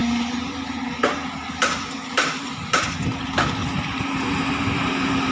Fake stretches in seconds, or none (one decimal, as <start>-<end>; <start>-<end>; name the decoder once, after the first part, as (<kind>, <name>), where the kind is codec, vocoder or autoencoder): 0.0-3.2 (vocoder, BigVGAN v2); 3.6-5.3